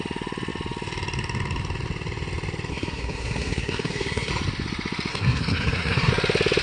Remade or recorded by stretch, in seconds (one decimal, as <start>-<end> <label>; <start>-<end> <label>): 0.0-2.7 recorded; 2.7-4.3 remade; 4.3-5.1 recorded; 5.1-6.1 remade; 6.1-6.6 recorded